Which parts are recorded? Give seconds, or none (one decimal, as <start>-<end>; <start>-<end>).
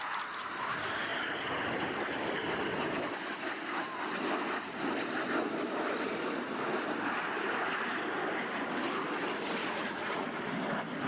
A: 0.0-9.6; 10.3-11.1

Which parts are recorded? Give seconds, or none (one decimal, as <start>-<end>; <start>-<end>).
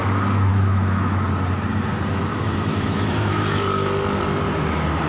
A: 0.0-0.5; 1.2-2.3; 3.3-5.1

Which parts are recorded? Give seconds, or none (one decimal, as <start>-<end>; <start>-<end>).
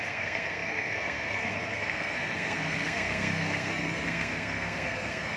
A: none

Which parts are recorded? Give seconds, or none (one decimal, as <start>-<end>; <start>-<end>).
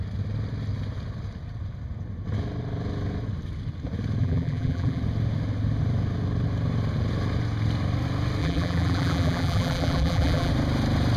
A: 0.0-4.2; 5.0-8.4; 10.5-11.2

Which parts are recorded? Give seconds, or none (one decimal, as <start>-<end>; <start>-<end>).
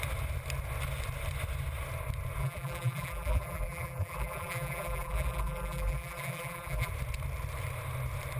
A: 0.0-2.4; 6.9-8.4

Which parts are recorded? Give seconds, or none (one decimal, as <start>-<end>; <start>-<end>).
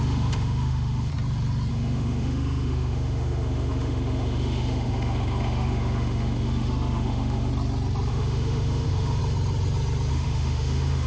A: 1.1-1.7; 7.5-8.1; 9.2-10.1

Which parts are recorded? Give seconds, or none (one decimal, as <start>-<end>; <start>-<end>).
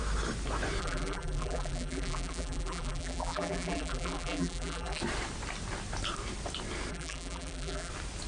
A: 0.0-0.8; 5.0-6.9; 7.9-8.3